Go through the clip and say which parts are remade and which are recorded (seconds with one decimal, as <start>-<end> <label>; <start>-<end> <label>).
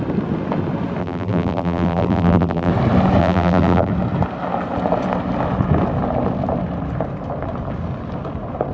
0.0-1.0 recorded; 1.0-2.7 remade; 2.7-3.2 recorded; 3.2-3.9 remade; 3.9-8.7 recorded